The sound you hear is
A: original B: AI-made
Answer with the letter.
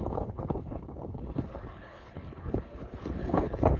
B